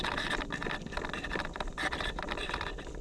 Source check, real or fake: real